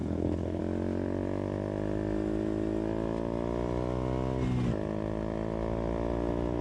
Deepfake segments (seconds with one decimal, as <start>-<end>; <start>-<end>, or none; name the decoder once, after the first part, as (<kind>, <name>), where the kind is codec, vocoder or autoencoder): 0.0-0.6 (codec, HILCodec)